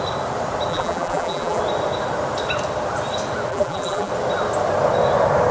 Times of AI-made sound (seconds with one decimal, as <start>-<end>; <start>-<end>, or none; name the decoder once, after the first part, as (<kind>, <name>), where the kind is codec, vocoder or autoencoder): 0.7-1.6 (vocoder, BigVGAN v2); 3.5-4.1